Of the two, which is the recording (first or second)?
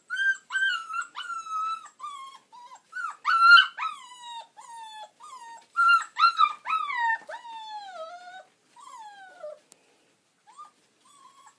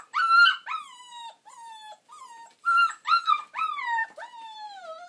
first